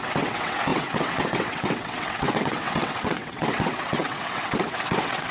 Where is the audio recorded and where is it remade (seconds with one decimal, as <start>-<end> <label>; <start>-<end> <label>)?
0.0-5.3 remade